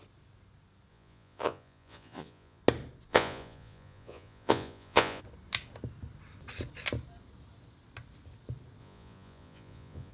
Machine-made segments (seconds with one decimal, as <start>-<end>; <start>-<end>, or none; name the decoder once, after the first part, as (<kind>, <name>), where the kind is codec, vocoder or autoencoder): 0.9-2.6 (vocoder, Vocos); 3.1-5.2; 8.8-10.1